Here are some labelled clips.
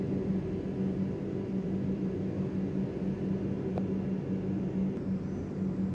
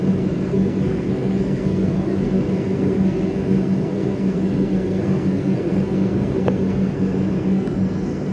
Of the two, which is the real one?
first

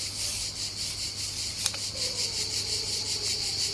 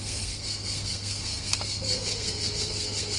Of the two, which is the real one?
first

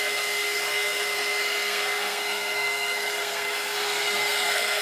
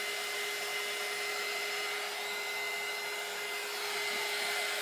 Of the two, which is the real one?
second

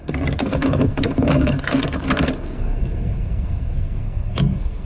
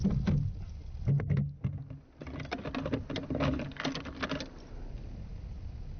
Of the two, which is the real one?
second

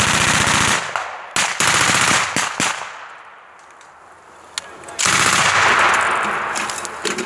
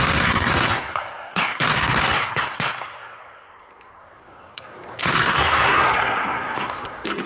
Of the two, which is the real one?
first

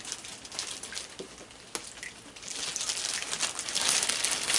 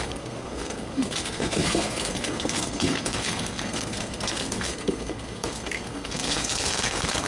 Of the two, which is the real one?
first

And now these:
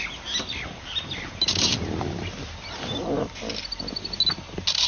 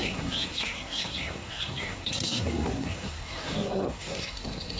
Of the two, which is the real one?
first